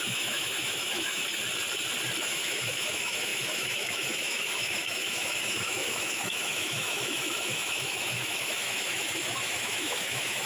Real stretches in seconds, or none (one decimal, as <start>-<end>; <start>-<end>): 1.2-2.2